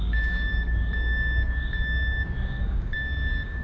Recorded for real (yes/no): no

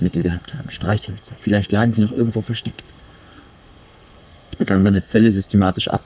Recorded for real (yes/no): no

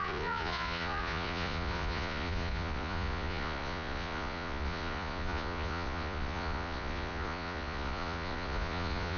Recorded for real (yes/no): no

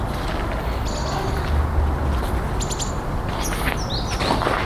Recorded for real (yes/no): yes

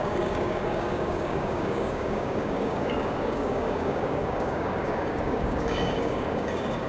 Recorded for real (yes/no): no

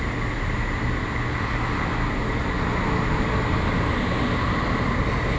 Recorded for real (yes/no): yes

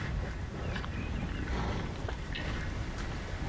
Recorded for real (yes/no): yes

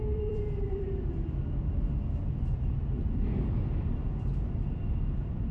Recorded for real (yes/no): no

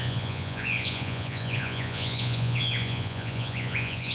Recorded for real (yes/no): no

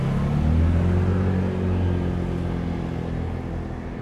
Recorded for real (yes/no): yes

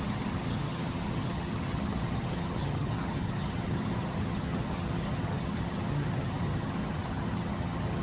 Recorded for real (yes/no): no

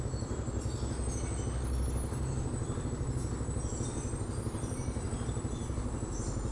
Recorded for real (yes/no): yes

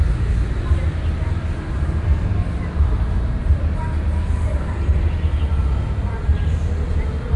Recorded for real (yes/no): yes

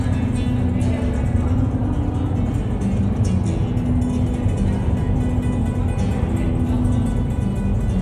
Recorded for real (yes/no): yes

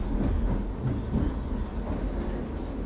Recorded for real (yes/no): yes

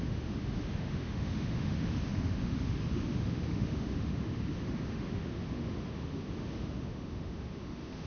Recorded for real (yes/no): no